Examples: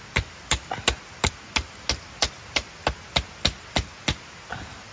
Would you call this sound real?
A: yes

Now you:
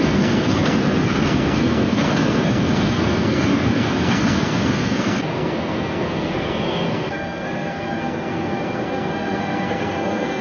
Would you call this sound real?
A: no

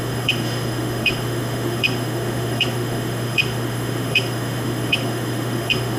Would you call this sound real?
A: no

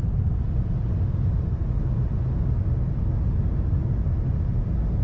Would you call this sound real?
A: yes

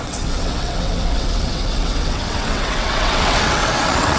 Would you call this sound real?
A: no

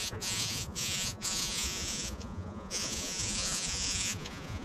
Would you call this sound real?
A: no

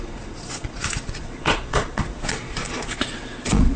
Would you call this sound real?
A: no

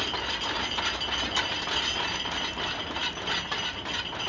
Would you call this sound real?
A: yes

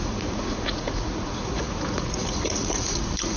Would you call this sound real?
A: no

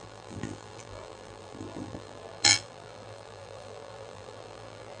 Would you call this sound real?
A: no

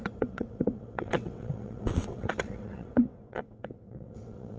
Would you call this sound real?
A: no